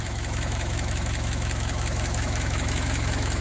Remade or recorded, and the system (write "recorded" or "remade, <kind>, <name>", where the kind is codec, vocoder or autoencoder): remade, autoencoder, DAC-VAE